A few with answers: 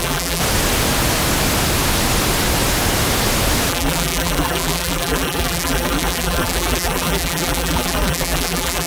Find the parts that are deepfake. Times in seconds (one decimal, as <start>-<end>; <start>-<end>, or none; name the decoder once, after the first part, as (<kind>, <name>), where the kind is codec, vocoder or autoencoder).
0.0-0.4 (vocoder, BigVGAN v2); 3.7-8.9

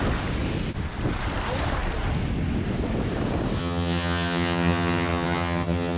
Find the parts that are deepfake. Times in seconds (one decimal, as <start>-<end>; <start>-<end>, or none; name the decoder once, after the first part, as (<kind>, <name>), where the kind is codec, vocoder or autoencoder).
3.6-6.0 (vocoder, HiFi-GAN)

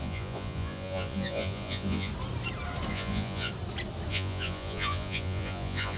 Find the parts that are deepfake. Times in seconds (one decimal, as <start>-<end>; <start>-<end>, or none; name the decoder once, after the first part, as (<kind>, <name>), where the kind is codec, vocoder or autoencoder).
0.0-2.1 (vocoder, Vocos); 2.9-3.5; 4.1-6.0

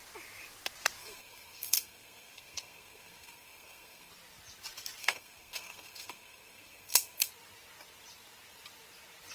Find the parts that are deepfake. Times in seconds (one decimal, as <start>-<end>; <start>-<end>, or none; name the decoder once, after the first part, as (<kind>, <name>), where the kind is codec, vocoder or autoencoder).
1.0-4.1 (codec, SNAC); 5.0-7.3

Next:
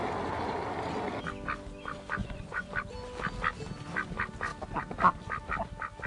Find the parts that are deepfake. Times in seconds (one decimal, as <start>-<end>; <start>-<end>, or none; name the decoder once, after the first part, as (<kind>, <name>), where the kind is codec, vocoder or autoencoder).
2.2-2.7 (vocoder, Vocos)

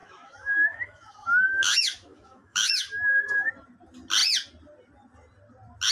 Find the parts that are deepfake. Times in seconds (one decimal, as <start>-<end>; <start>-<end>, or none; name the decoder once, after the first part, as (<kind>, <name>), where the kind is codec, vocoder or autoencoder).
0.0-3.5 (autoencoder, DAC-VAE)